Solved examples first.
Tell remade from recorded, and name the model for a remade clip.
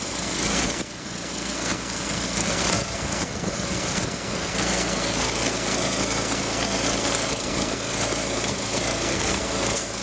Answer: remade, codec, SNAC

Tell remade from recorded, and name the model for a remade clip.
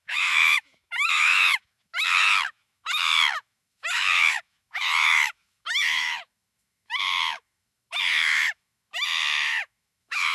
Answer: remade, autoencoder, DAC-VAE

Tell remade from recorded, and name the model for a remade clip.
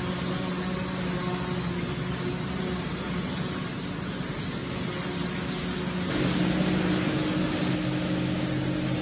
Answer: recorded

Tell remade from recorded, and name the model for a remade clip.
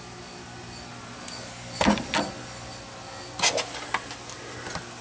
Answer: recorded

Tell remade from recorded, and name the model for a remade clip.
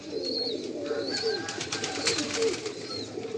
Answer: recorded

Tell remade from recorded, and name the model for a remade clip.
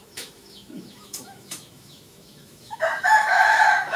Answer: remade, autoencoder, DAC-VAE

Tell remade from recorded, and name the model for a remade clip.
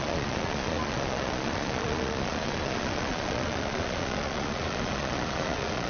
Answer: remade, vocoder, Vocos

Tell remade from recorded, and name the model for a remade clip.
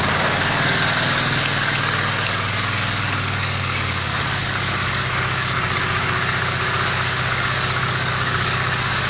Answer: remade, codec, DAC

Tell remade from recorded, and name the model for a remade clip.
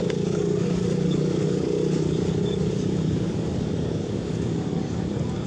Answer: remade, codec, DAC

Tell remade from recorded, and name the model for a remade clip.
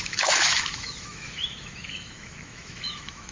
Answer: remade, autoencoder, DAC-VAE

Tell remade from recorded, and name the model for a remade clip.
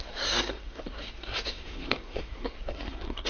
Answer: remade, codec, SNAC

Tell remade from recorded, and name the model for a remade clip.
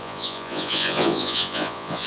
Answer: remade, vocoder, Vocos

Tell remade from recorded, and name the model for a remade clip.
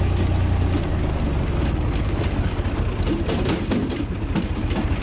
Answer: recorded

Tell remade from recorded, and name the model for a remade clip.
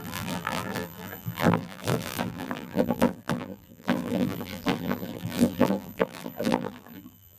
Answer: remade, vocoder, BigVGAN v2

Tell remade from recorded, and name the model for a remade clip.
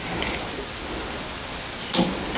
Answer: recorded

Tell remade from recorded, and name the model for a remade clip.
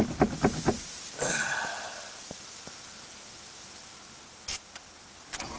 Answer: recorded